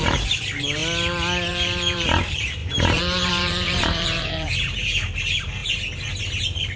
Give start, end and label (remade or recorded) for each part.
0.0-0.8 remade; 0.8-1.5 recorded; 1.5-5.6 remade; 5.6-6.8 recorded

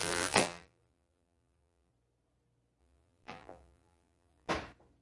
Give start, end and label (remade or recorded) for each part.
0.0-1.9 remade; 1.9-2.8 recorded; 2.8-4.5 remade; 4.5-5.0 recorded

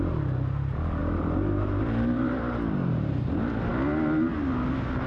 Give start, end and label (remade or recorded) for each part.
0.0-1.0 recorded; 1.0-3.3 remade; 3.3-5.1 recorded